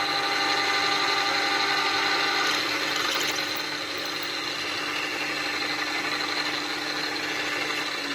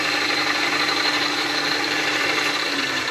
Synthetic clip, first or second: second